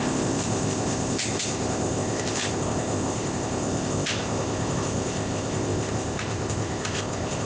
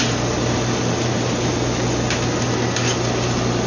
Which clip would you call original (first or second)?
second